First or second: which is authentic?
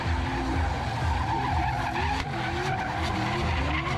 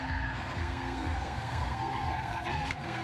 first